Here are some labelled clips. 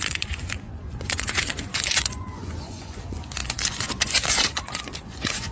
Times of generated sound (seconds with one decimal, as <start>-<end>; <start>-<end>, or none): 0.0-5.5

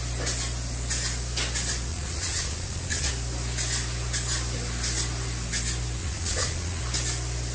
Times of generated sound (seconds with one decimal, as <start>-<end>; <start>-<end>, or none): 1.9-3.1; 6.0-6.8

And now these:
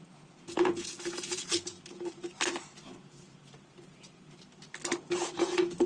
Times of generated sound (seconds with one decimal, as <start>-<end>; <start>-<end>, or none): 0.0-1.7; 5.2-5.9